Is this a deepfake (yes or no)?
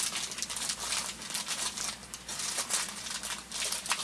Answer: no